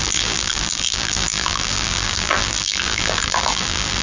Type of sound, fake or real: fake